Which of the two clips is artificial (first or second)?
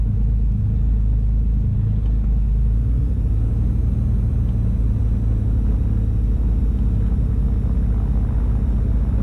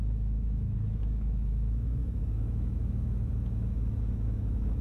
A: second